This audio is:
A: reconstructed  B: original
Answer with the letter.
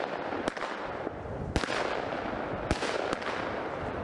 B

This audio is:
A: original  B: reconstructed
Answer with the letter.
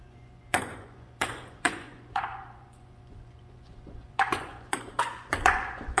B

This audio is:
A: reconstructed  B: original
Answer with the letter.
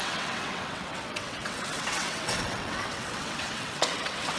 A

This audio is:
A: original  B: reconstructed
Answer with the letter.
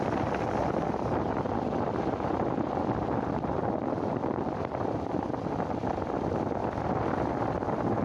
A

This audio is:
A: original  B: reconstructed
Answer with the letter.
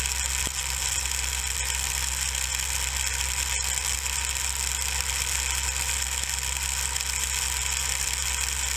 A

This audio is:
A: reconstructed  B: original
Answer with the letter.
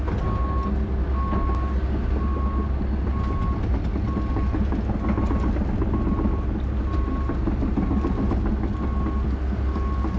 B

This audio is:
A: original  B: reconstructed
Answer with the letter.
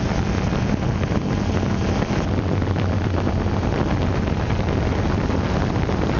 A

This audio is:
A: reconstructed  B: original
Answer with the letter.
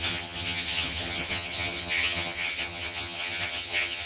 A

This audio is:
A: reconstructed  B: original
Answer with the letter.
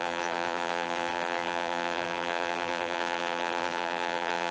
A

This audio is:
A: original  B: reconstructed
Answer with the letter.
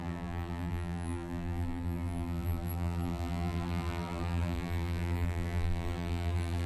B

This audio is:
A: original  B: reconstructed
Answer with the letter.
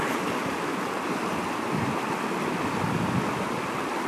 A